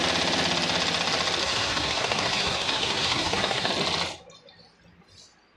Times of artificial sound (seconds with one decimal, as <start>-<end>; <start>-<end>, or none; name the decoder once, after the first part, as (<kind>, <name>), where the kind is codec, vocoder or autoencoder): 1.4-3.7 (codec, SNAC)